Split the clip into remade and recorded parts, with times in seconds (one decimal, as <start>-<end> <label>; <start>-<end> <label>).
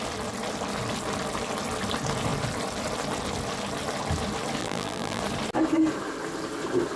0.0-4.6 recorded; 4.6-5.2 remade; 5.2-7.0 recorded